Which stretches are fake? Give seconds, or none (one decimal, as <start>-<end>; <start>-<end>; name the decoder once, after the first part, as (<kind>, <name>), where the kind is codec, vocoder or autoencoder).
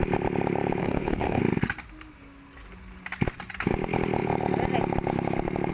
0.8-1.4 (codec, SNAC)